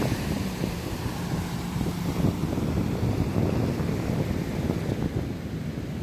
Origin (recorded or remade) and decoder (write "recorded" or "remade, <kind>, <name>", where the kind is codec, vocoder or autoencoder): recorded